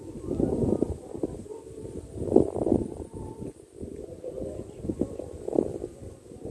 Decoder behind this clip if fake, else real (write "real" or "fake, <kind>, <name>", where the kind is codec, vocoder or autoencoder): fake, vocoder, BigVGAN v2